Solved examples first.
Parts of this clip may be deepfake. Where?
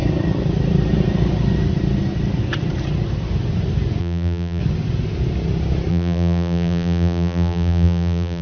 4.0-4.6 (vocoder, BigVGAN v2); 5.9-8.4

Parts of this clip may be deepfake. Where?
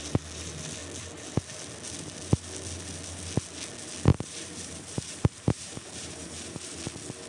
4.1-6.8 (vocoder, BigVGAN v2)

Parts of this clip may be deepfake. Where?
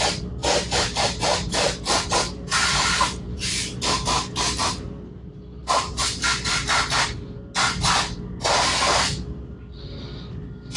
0.4-4.9 (vocoder, BigVGAN v2); 5.6-6.5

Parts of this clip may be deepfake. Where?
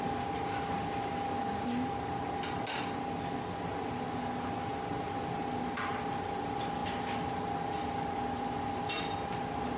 none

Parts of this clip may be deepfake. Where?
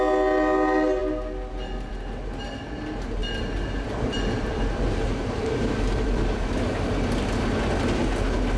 3.2-6.8 (vocoder, BigVGAN v2)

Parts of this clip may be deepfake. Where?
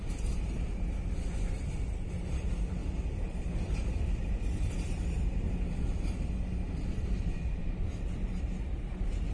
2.8-3.9 (vocoder, BigVGAN v2); 7.6-8.4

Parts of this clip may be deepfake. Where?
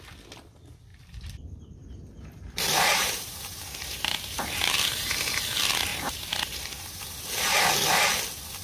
0.9-5.4 (vocoder, BigVGAN v2); 5.9-8.1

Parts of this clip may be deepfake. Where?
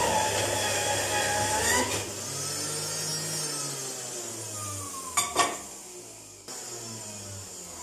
none